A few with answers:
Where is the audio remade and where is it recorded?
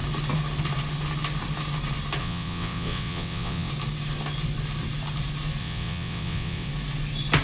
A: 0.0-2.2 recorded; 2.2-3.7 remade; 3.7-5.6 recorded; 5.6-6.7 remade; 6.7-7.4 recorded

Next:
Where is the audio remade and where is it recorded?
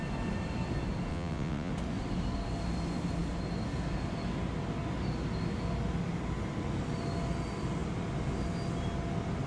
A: 0.0-1.1 recorded; 1.1-1.7 remade; 1.7-9.5 recorded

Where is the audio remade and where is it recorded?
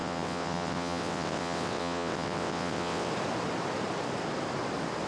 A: 0.0-3.1 remade; 3.1-5.1 recorded